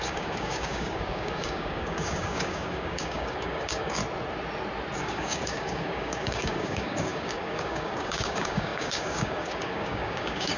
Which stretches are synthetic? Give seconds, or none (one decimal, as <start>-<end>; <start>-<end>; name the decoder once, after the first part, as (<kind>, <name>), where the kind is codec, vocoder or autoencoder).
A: 0.0-4.0 (codec, DAC); 5.0-10.6